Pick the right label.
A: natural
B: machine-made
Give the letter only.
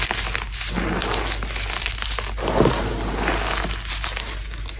A